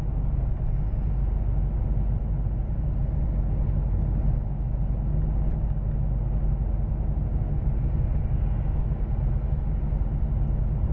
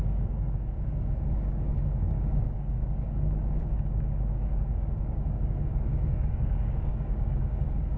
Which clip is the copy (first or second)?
second